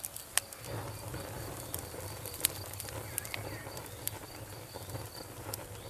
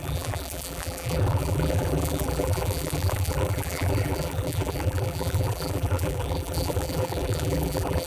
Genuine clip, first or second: first